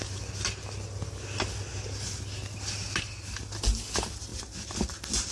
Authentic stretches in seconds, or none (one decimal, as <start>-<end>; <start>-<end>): 0.0-5.3